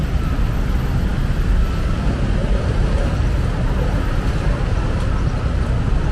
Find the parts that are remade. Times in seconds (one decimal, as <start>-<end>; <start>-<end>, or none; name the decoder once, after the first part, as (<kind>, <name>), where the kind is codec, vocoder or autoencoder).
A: 2.4-3.3 (vocoder, BigVGAN v2)